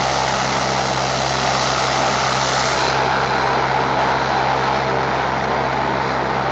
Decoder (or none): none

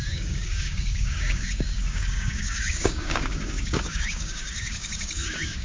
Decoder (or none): codec, DAC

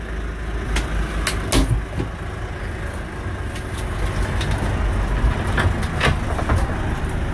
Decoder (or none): none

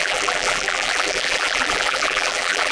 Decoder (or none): vocoder, BigVGAN v2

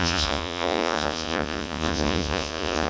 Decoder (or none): vocoder, Vocos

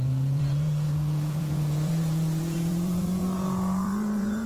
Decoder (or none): vocoder, Vocos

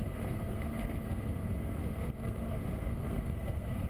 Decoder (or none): codec, SNAC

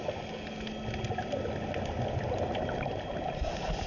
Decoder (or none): none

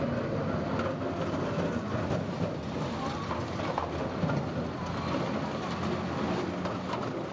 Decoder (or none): none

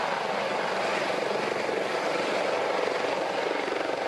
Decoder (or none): none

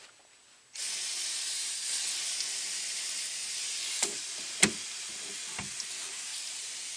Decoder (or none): none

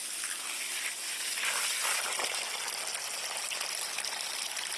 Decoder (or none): none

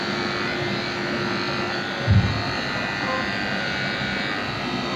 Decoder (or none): vocoder, BigVGAN v2